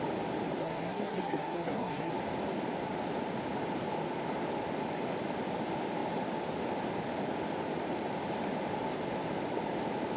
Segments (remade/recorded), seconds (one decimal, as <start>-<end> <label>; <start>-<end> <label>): 0.0-0.6 recorded; 0.6-2.1 remade; 2.1-10.2 recorded